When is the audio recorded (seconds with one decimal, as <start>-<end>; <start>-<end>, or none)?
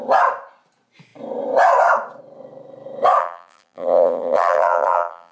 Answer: 0.0-3.2